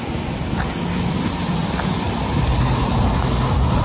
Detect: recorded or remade recorded